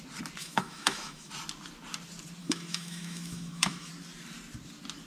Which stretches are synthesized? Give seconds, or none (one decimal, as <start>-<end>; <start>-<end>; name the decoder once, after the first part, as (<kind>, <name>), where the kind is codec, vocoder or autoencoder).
0.4-1.3 (autoencoder, DAC-VAE); 2.4-3.9